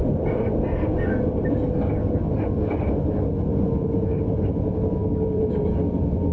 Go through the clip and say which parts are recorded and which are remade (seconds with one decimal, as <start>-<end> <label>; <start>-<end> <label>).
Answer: 0.0-5.0 recorded; 5.0-5.8 remade; 5.8-6.3 recorded